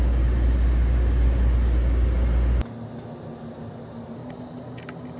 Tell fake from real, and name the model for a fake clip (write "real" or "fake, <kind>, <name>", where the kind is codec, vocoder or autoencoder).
real